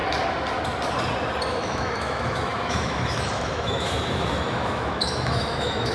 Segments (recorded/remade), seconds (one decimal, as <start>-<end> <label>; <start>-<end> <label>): 0.0-1.5 recorded; 1.5-5.9 remade